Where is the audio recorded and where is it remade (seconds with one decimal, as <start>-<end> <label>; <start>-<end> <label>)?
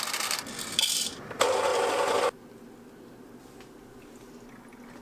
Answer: 0.0-5.0 recorded